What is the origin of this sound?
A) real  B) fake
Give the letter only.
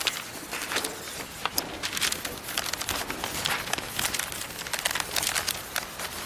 A